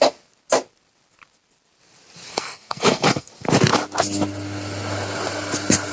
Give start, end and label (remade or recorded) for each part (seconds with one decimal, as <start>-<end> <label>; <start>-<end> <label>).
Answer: 0.0-2.3 recorded; 2.3-3.3 remade; 3.3-5.9 recorded